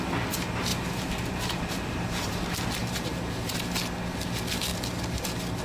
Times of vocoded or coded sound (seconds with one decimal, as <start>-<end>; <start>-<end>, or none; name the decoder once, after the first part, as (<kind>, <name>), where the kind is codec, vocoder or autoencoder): 0.7-2.3 (vocoder, BigVGAN v2); 2.8-3.5